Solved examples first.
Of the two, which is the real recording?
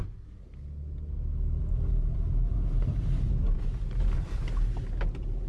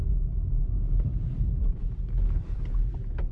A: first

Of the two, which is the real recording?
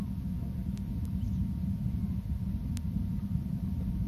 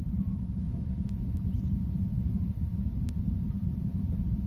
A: first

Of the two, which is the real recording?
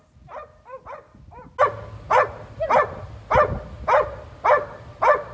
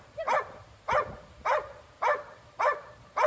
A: first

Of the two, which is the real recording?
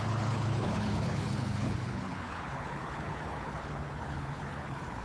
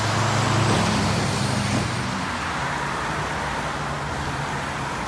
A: second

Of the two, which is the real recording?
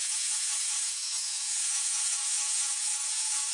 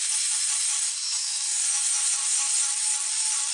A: second